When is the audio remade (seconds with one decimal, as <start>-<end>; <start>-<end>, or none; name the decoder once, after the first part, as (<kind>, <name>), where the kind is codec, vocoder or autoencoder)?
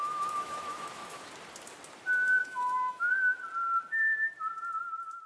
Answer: 0.0-1.3 (autoencoder, DAC-VAE); 2.4-3.1